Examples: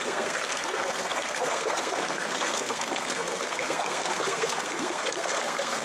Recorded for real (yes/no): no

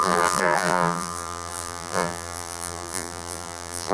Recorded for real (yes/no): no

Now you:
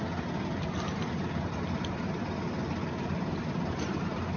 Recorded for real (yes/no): yes